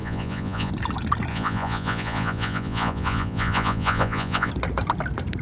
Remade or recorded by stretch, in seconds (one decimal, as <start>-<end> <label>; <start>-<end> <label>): 0.0-0.7 remade; 0.7-1.3 recorded; 1.3-4.5 remade; 4.5-5.4 recorded